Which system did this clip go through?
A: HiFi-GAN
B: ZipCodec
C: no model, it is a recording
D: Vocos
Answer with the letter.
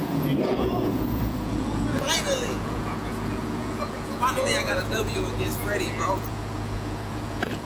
D